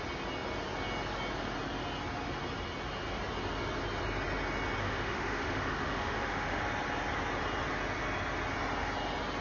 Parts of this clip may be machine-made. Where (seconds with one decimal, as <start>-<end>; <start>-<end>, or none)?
4.8-6.6